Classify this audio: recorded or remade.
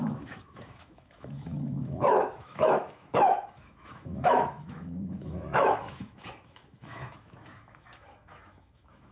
remade